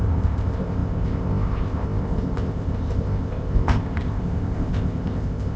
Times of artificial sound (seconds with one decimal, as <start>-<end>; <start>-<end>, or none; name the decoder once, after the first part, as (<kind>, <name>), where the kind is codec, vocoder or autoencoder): 0.0-5.6 (codec, ZipCodec)